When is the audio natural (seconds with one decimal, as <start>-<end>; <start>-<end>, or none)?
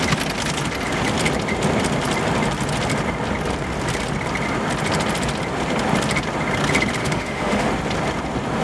0.0-7.0; 7.7-8.6